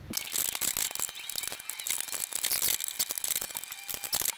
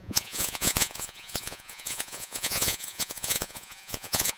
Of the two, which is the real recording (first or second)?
first